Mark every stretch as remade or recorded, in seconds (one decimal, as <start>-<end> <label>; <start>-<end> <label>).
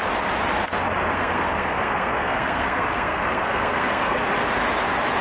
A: 0.0-1.1 recorded; 1.1-4.2 remade; 4.2-5.2 recorded